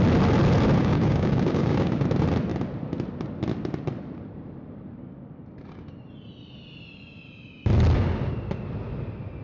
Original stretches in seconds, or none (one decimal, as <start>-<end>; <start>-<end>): 0.0-0.8; 2.0-9.4